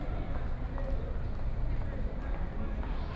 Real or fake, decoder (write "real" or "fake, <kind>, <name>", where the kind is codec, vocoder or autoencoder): real